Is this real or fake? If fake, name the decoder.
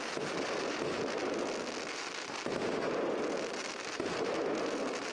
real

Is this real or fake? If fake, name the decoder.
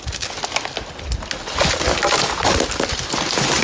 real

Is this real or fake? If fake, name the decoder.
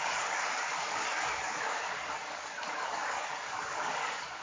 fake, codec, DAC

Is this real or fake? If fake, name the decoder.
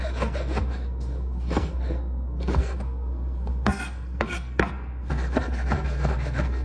fake, codec, SNAC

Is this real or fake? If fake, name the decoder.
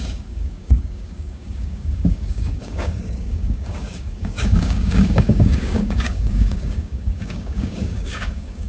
fake, codec, DAC